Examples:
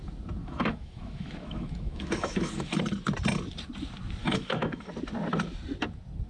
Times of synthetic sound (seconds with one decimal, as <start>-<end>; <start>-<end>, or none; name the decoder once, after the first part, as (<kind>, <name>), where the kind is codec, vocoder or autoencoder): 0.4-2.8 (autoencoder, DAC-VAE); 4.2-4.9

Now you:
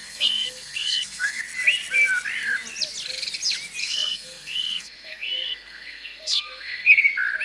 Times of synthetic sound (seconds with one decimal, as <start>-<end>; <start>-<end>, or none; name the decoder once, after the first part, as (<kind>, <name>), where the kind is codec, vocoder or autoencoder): 0.0-1.4 (codec, SNAC); 3.8-7.0

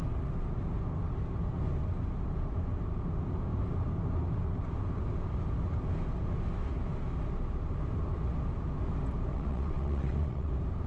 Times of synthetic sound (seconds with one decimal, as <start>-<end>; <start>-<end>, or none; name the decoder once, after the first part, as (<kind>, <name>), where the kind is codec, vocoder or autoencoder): 9.3-10.5 (vocoder, WaveNeXt)